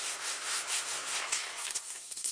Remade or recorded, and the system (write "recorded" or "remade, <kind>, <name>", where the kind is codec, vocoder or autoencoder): remade, codec, SNAC